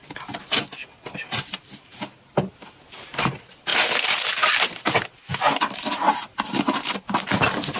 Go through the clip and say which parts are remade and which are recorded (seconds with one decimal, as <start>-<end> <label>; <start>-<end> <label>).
0.0-7.8 recorded